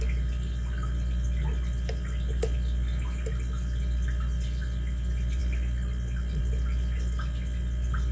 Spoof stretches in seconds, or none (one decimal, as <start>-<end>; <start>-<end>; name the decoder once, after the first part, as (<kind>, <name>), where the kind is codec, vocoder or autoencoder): none